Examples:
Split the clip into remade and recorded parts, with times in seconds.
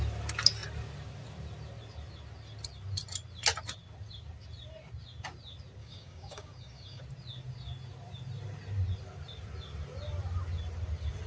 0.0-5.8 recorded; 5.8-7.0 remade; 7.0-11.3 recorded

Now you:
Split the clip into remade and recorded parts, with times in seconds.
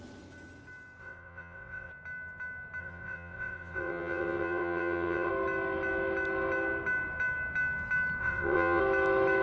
0.0-1.0 recorded; 1.0-1.9 remade; 1.9-2.8 recorded; 2.8-5.3 remade; 5.3-8.2 recorded; 8.2-8.8 remade; 8.8-9.4 recorded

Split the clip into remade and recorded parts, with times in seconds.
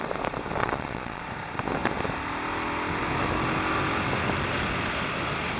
0.0-0.6 recorded; 0.6-1.2 remade; 1.2-5.6 recorded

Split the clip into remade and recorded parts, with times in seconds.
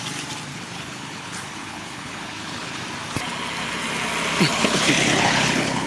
0.0-0.5 recorded; 0.5-2.8 remade; 2.8-4.5 recorded; 4.5-5.9 remade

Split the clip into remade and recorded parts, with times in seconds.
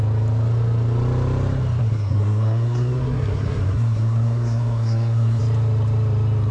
0.0-1.8 recorded; 1.8-5.4 remade; 5.4-6.5 recorded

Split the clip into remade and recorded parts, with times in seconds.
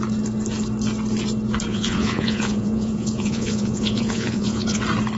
0.0-1.7 recorded; 1.7-4.8 remade; 4.8-5.2 recorded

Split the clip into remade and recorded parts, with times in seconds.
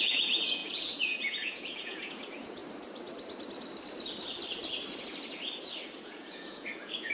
0.0-2.6 remade; 2.6-6.0 recorded; 6.0-7.1 remade